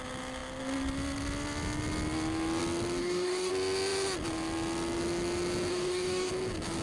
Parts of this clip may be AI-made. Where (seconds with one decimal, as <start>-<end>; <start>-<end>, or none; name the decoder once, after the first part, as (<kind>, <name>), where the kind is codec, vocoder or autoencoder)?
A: 3.0-3.5 (codec, DAC); 5.7-6.3